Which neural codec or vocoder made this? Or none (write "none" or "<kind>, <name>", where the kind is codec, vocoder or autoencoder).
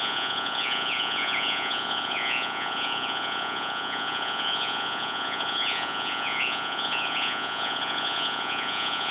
vocoder, Vocos